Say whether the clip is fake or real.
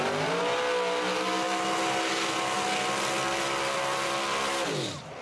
real